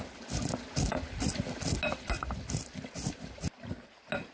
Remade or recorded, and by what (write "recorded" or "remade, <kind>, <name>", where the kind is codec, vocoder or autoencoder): recorded